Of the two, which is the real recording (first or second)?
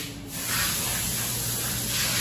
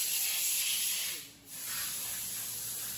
first